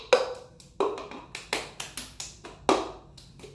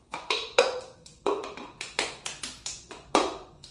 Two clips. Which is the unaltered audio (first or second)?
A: first